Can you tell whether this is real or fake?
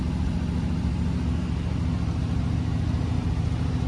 real